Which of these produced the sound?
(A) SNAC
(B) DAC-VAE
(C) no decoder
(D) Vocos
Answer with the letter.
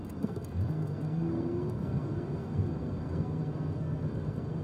A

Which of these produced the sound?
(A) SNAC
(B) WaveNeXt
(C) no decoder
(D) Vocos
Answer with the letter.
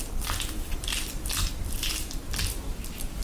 C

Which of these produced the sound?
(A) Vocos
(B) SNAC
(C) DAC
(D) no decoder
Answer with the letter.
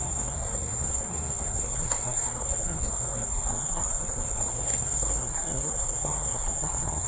B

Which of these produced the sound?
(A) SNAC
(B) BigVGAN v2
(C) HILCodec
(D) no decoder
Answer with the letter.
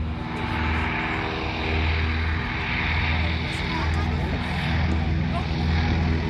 D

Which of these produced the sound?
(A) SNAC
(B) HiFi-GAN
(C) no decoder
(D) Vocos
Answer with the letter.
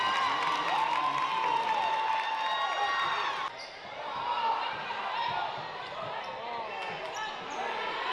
C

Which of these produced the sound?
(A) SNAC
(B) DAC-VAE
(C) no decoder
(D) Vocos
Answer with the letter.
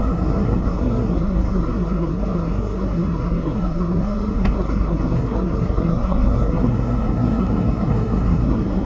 A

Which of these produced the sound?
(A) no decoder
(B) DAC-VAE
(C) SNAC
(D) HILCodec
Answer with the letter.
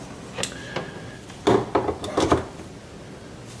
A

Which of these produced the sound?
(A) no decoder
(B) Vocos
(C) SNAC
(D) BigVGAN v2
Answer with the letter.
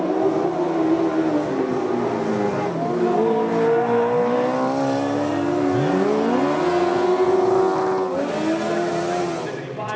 A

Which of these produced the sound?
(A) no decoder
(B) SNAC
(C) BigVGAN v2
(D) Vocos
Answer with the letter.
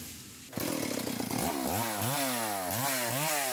A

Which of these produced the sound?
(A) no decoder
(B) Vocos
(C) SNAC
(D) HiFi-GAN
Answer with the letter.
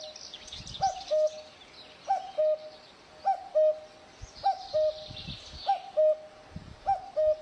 A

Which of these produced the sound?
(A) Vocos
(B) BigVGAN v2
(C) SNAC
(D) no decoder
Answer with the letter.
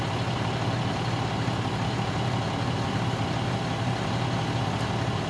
D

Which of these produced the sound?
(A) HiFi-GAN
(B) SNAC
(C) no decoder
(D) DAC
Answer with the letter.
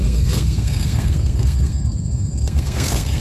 B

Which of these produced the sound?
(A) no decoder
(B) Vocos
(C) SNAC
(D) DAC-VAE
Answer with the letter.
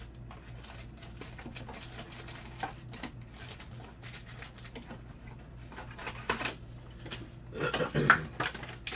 A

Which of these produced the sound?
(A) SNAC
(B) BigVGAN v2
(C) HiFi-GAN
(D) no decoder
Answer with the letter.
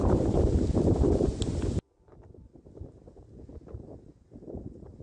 D